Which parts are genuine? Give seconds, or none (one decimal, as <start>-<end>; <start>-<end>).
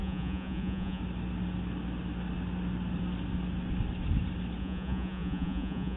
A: 1.0-4.6